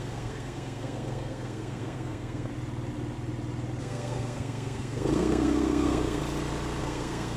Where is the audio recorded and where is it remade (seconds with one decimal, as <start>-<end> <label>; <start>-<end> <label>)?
0.0-2.5 remade; 2.5-3.8 recorded; 3.8-6.2 remade; 6.2-6.8 recorded; 6.8-7.4 remade